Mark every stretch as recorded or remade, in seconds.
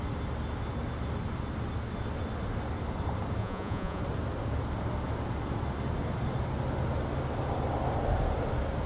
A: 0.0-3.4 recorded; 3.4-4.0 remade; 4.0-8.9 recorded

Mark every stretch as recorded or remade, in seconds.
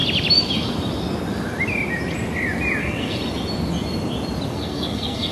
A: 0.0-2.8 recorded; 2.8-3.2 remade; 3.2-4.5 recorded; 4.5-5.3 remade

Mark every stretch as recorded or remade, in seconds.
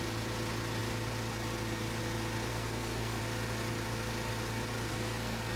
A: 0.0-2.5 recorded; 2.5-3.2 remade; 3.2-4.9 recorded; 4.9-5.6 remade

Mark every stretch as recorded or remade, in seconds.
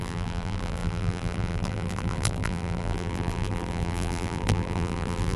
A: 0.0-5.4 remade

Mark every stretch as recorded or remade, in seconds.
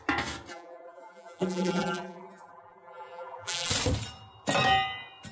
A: 0.0-0.5 recorded; 0.5-3.7 remade; 3.7-5.3 recorded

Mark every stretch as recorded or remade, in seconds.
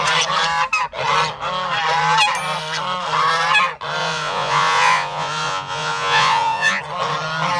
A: 0.0-4.0 recorded; 4.0-6.8 remade; 6.8-7.6 recorded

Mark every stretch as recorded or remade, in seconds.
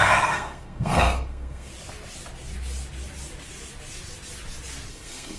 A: 0.0-1.7 remade; 1.7-4.9 recorded; 4.9-5.4 remade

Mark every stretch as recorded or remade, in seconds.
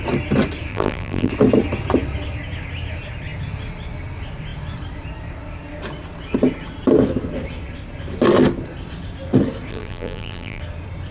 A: 0.0-0.7 recorded; 0.7-1.3 remade; 1.3-9.7 recorded; 9.7-10.6 remade; 10.6-11.1 recorded